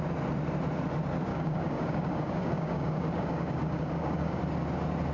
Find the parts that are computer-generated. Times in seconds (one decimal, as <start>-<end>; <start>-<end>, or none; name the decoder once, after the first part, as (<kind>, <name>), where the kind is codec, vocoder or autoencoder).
1.3-4.4 (codec, DAC)